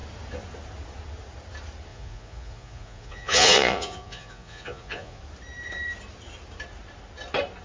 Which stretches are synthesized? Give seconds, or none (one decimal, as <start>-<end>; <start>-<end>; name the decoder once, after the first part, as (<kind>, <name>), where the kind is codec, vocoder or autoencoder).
1.9-5.2 (vocoder, Vocos)